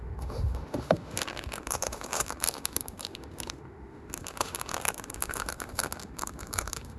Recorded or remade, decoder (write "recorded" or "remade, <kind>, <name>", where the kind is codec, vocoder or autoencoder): remade, autoencoder, DAC-VAE